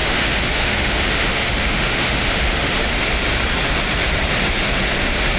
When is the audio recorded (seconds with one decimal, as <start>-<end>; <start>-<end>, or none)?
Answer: 2.9-5.4